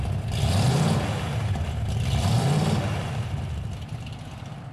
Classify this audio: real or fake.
fake